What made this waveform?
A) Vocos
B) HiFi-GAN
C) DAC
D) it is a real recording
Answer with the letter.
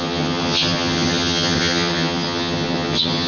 B